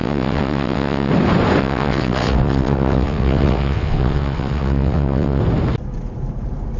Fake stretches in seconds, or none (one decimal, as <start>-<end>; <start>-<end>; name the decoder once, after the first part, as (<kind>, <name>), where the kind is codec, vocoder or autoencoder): 0.0-1.1 (vocoder, WaveNeXt); 1.6-5.4